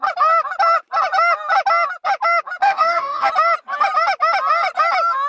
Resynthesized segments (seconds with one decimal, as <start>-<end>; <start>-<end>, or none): 2.6-3.3